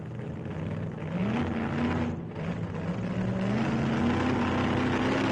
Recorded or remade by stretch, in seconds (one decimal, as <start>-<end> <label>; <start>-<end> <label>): 0.0-5.3 recorded